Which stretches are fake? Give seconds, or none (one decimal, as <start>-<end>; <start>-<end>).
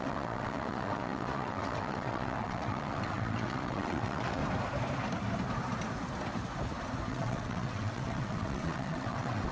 0.0-4.4; 7.1-9.5